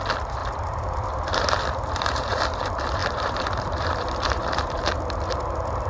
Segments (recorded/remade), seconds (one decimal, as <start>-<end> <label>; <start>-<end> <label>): 0.0-0.4 recorded; 0.4-2.4 remade; 2.4-3.0 recorded; 3.0-4.8 remade; 4.8-5.9 recorded